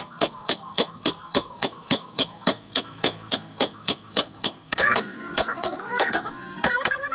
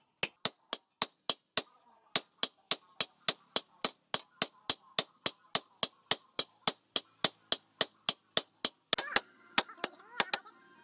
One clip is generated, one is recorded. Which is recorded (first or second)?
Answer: second